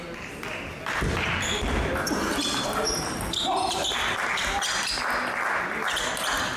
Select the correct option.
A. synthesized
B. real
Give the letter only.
B